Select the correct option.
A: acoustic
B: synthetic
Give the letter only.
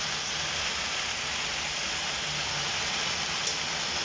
A